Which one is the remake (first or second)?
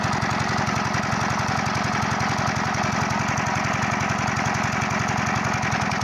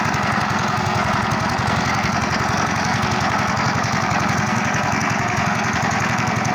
second